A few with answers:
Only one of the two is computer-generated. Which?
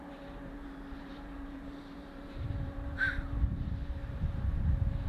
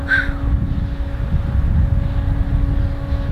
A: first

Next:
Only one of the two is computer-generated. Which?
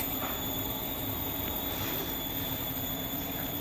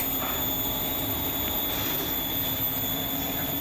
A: first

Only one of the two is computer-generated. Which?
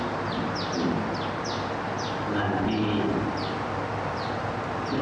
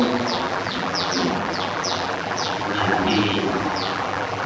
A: second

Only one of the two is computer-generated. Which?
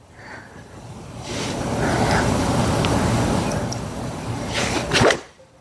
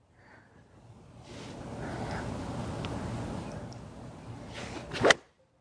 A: first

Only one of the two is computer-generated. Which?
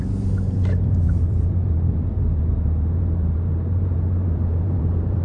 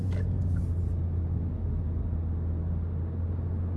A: first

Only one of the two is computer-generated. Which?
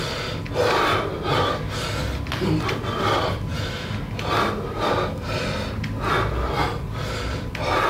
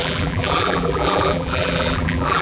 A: second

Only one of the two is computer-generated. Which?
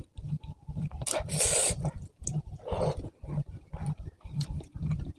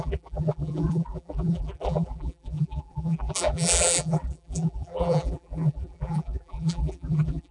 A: second